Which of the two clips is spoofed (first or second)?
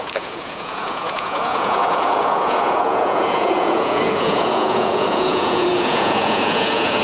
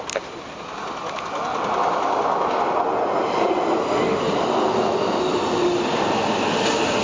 first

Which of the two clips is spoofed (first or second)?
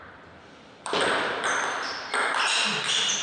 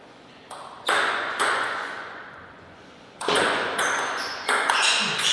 second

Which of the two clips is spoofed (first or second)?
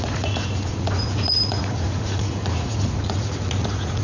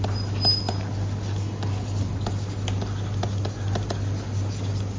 first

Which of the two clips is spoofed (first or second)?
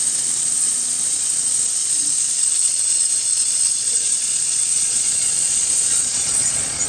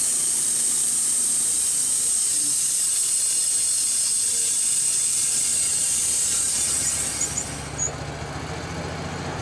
first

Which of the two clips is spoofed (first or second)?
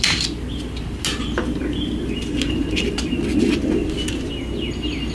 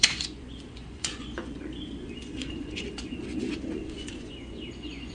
second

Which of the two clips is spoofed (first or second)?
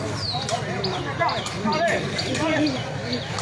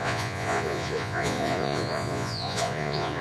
second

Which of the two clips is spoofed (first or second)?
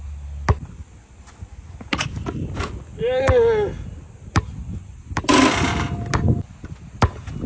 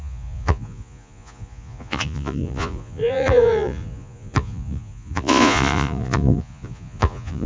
second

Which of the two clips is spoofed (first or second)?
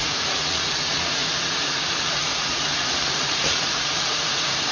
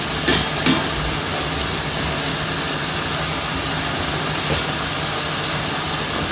first